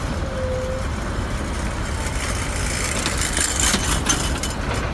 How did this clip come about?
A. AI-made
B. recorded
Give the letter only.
B